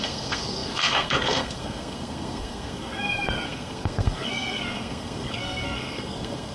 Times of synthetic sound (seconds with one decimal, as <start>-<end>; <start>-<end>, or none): 0.0-6.5